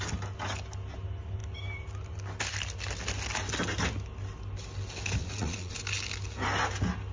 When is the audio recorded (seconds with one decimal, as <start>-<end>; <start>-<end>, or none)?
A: 0.0-5.2; 5.7-7.1